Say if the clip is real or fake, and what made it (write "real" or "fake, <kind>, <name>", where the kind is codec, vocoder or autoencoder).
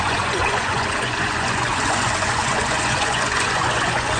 fake, vocoder, Vocos